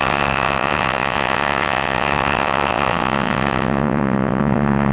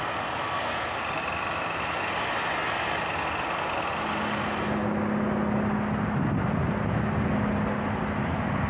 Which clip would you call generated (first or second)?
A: first